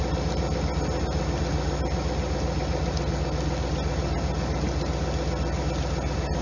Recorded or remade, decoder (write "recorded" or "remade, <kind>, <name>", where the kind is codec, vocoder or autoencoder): recorded